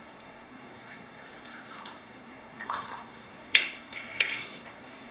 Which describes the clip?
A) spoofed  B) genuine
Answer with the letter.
A